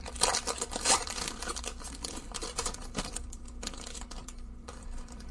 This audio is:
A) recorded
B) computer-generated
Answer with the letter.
B